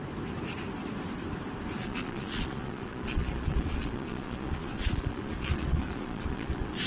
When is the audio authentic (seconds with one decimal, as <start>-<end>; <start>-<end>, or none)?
0.0-1.8